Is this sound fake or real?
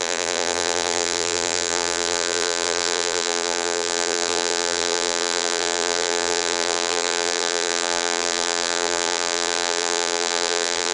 fake